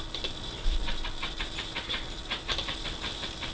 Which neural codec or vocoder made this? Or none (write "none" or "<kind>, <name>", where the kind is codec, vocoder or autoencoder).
vocoder, BigVGAN v2